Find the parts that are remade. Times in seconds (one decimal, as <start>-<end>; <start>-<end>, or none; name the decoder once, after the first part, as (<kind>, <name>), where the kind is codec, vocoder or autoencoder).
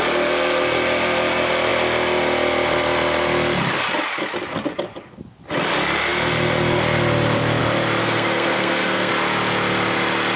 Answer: 8.0-9.1 (codec, SNAC)